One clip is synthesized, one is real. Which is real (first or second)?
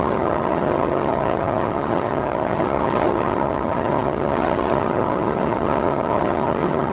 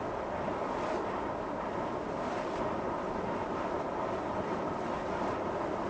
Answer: second